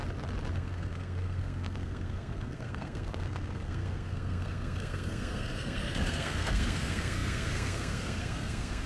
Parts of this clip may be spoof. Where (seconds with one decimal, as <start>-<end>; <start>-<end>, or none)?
0.5-8.9